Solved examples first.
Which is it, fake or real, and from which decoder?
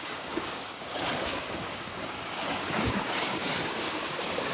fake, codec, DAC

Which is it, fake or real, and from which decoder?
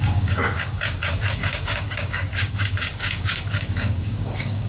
fake, codec, DAC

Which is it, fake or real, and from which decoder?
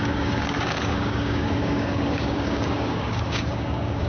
fake, codec, DAC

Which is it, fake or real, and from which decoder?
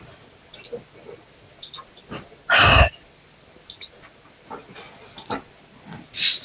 real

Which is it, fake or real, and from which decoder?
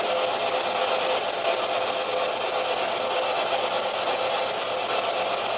real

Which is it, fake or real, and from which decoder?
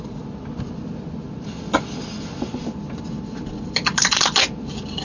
real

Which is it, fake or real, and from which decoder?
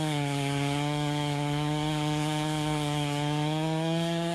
fake, codec, DAC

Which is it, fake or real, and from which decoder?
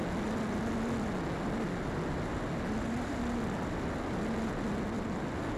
real